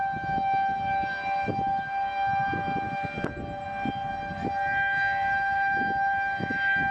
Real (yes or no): yes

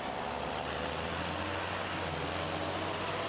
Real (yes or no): yes